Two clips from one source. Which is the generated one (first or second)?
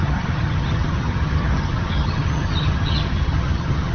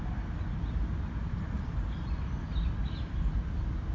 first